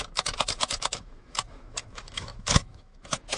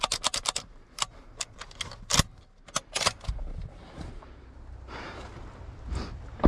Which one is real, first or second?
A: second